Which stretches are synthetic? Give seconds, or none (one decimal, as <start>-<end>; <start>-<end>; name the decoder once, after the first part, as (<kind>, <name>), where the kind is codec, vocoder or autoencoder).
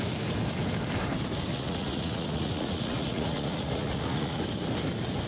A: 1.5-4.4 (vocoder, Vocos)